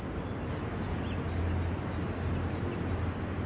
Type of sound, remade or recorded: recorded